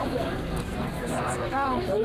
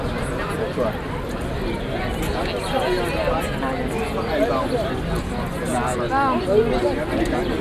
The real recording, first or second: second